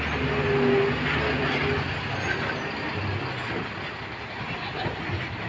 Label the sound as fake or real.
real